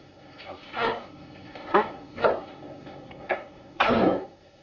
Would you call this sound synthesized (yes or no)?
yes